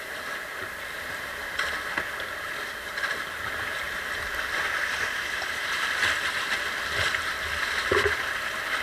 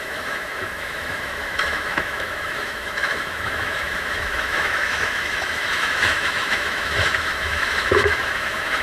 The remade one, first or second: second